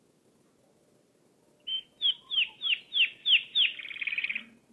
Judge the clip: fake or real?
real